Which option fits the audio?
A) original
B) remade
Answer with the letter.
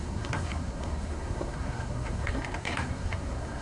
B